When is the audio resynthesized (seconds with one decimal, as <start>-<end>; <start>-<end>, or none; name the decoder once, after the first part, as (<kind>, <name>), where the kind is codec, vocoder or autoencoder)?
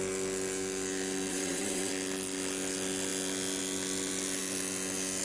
1.3-1.9 (vocoder, WaveNeXt)